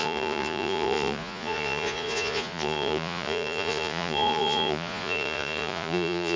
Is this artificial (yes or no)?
yes